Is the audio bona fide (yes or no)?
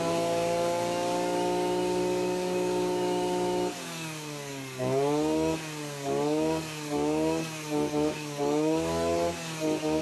no